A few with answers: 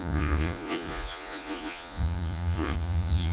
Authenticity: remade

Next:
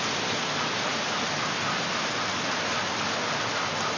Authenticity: recorded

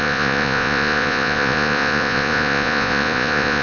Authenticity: remade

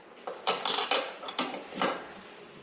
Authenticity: recorded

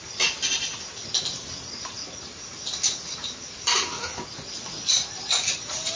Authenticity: recorded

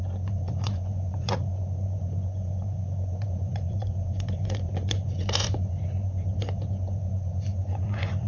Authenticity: remade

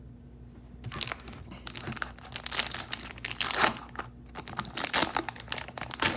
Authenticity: recorded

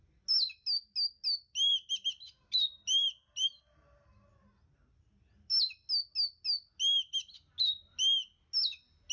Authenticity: recorded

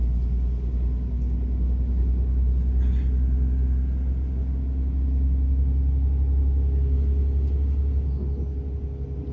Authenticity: recorded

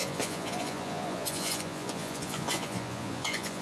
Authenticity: remade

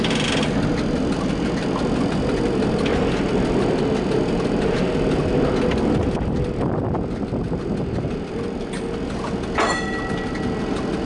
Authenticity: recorded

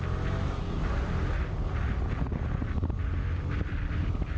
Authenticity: recorded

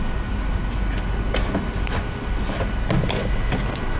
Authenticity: recorded